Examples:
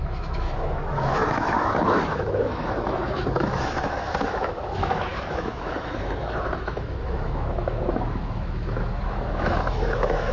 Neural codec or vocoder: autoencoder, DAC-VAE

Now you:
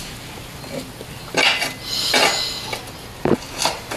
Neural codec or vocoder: none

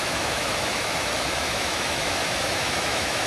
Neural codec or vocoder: autoencoder, DAC-VAE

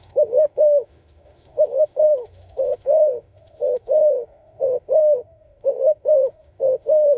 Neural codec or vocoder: autoencoder, DAC-VAE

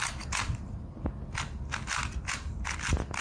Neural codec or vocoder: none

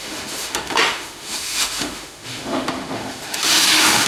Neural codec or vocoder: autoencoder, DAC-VAE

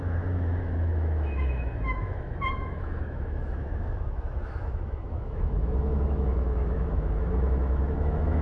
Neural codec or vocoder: autoencoder, DAC-VAE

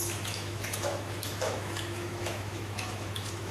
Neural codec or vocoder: autoencoder, DAC-VAE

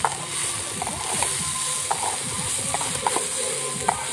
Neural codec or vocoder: none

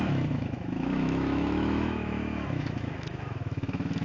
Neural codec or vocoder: autoencoder, DAC-VAE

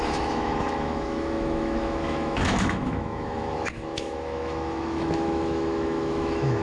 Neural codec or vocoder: autoencoder, DAC-VAE